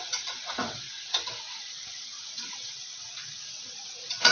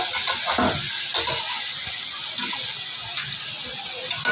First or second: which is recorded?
second